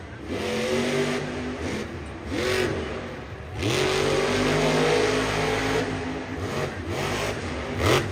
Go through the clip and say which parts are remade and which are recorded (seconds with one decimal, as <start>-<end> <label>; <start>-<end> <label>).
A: 0.0-8.1 recorded

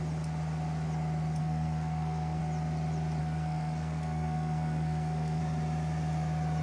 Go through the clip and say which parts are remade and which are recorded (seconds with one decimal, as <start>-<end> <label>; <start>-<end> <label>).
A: 0.0-1.4 recorded; 1.4-2.4 remade; 2.4-3.2 recorded; 3.2-5.4 remade; 5.4-6.6 recorded

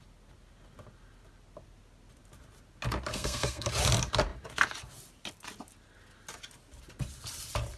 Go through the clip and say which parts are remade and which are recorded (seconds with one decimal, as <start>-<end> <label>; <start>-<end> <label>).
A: 0.0-3.1 recorded; 3.1-3.7 remade; 3.7-7.8 recorded

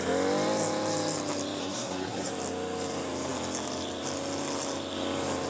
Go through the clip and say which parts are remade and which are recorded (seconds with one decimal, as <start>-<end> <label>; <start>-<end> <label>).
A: 0.0-1.6 recorded; 1.6-2.3 remade; 2.3-5.5 recorded

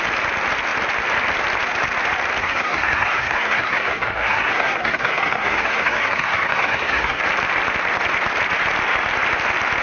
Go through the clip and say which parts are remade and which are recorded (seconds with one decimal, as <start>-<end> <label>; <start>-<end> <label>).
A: 0.0-2.4 recorded; 2.4-7.2 remade; 7.2-9.8 recorded

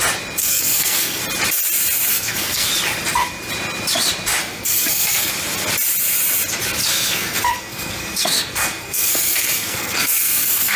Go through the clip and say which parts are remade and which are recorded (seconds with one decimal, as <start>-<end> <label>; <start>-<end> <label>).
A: 0.0-0.4 recorded; 0.4-1.2 remade; 1.2-2.1 recorded; 2.1-2.7 remade; 2.7-4.4 recorded; 4.4-5.3 remade; 5.3-6.8 recorded; 6.8-10.8 remade

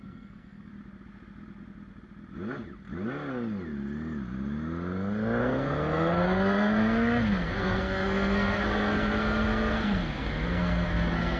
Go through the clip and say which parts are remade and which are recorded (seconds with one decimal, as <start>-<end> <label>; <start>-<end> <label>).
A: 0.0-0.7 remade; 0.7-5.4 recorded; 5.4-11.4 remade